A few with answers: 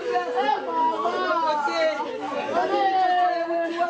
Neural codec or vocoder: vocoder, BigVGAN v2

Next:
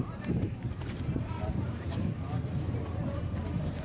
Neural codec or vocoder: vocoder, BigVGAN v2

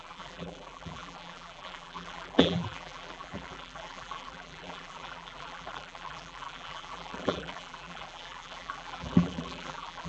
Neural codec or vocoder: vocoder, BigVGAN v2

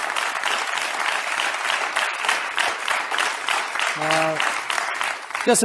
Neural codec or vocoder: vocoder, BigVGAN v2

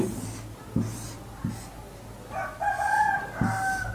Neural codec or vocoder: none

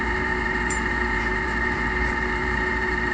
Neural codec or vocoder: vocoder, BigVGAN v2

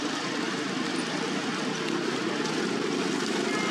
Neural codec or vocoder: none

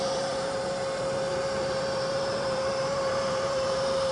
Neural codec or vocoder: vocoder, BigVGAN v2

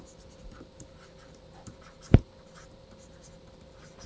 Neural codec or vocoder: none